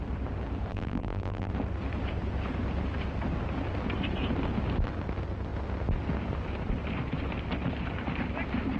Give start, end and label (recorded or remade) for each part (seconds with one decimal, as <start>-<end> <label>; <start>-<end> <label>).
0.0-0.7 recorded; 0.7-1.5 remade; 1.5-8.8 recorded